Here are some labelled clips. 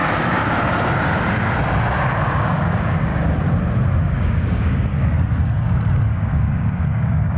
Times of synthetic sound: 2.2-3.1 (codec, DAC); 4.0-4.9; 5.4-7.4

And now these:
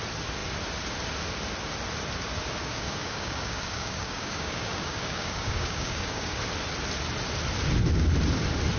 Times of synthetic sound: 2.6-6.4 (codec, DAC)

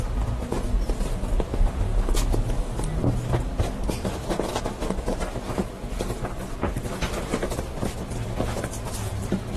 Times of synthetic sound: none